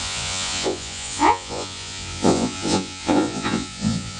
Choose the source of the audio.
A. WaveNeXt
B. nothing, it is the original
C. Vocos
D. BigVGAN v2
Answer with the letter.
C